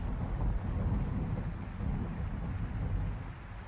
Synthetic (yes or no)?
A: no